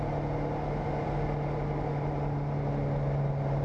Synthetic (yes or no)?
no